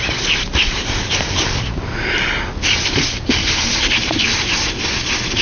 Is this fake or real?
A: real